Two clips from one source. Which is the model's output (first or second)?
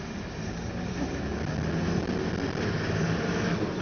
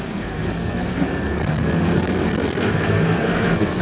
second